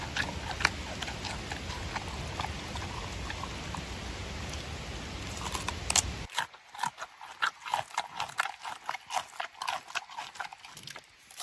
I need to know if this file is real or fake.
real